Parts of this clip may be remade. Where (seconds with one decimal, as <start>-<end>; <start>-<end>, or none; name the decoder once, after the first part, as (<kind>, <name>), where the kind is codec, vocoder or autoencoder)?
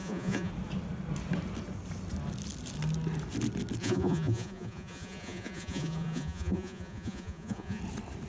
0.0-0.5 (vocoder, Vocos); 3.8-7.8